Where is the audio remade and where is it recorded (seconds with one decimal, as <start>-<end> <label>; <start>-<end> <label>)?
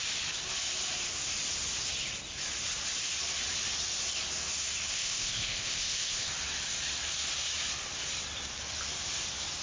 0.0-4.9 recorded; 4.9-6.3 remade; 6.3-9.6 recorded